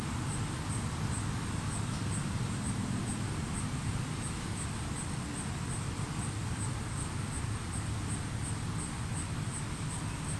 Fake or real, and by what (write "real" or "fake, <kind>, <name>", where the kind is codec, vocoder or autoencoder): real